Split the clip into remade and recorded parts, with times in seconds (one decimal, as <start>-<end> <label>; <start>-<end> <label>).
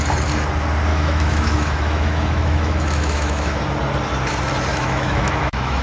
0.0-0.9 recorded; 0.9-3.6 remade; 3.6-4.7 recorded; 4.7-5.8 remade